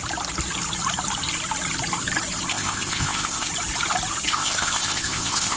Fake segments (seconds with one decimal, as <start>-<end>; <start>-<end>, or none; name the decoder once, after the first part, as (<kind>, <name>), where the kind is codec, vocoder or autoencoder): 2.5-3.5 (codec, ZipCodec); 4.3-5.6